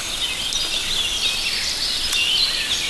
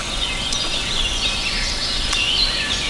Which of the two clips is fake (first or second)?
second